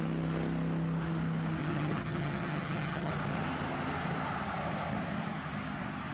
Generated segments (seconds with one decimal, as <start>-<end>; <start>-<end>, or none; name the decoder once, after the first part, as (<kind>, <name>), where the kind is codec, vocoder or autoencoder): 1.6-3.1 (vocoder, HiFi-GAN)